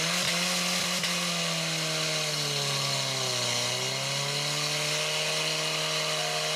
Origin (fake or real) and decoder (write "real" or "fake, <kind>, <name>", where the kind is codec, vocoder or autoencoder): real